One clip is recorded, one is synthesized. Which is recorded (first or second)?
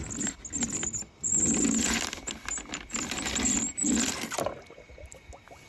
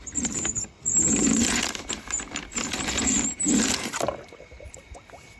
first